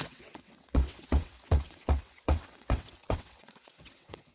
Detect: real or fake fake